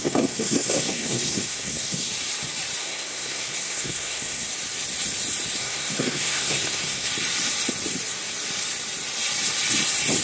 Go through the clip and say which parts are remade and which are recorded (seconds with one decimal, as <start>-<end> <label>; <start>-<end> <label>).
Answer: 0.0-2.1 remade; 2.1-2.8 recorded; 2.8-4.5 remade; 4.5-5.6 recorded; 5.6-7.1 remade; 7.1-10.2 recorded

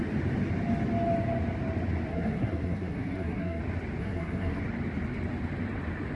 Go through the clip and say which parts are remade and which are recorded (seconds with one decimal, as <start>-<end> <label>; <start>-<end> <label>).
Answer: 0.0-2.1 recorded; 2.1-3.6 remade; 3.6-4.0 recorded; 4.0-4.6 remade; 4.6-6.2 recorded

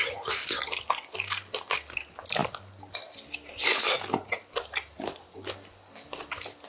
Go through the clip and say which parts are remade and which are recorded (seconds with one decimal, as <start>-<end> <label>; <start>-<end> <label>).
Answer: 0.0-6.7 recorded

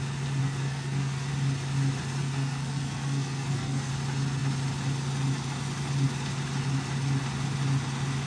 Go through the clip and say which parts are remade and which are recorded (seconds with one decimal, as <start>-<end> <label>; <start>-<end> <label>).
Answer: 0.0-0.4 recorded; 0.4-1.3 remade; 1.3-2.2 recorded; 2.2-3.9 remade; 3.9-8.3 recorded